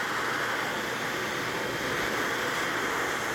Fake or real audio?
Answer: real